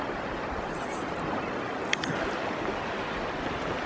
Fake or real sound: real